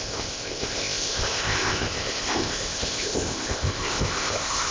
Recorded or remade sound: remade